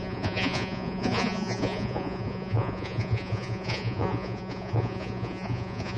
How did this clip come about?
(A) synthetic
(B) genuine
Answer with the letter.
A